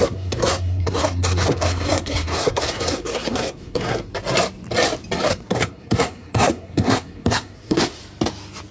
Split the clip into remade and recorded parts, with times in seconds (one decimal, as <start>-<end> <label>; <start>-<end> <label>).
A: 0.0-4.1 remade; 4.1-5.3 recorded; 5.3-8.0 remade; 8.0-8.7 recorded